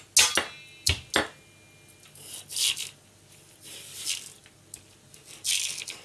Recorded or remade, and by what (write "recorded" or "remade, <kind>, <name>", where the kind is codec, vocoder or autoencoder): recorded